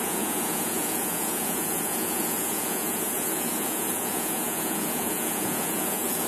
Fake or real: fake